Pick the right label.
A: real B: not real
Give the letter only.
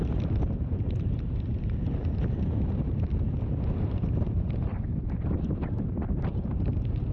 B